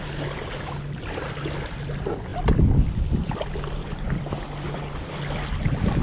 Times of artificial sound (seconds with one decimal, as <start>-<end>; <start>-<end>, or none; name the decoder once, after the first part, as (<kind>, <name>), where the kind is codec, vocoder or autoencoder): none